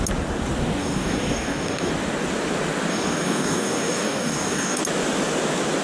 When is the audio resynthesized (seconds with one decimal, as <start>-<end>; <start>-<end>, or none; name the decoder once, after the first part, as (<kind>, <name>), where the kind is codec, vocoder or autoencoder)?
0.8-1.9 (codec, DAC); 2.9-4.8